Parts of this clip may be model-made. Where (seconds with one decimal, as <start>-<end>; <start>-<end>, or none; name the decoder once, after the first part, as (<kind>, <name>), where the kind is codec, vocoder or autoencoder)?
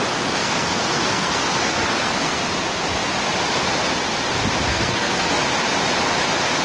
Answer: 0.4-2.4 (codec, SNAC); 4.7-5.3